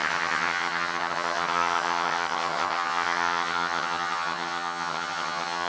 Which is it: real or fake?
fake